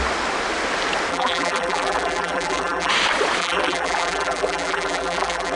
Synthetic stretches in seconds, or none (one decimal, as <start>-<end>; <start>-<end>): 1.1-2.9; 3.4-5.6